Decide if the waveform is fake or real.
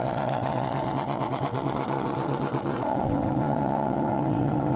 fake